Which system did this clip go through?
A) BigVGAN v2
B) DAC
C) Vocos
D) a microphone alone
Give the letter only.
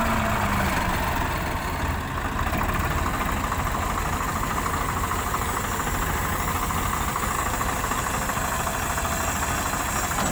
D